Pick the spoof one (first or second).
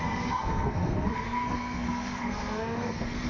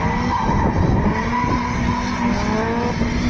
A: first